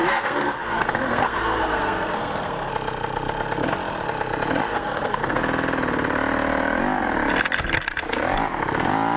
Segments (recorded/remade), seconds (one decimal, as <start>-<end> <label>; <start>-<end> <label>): 0.0-2.7 remade; 2.7-4.7 recorded; 4.7-5.4 remade; 5.4-9.2 recorded